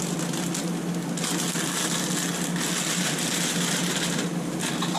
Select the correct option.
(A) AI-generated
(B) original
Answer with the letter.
B